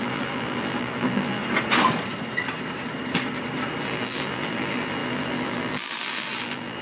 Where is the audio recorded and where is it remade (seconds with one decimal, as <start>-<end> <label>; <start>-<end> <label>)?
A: 0.0-1.4 remade; 1.4-3.8 recorded; 3.8-6.8 remade